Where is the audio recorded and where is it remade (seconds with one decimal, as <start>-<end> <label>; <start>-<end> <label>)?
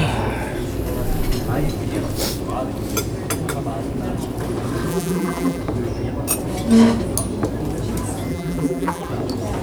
0.0-4.9 recorded; 4.9-5.6 remade; 5.6-8.3 recorded; 8.3-9.1 remade; 9.1-9.6 recorded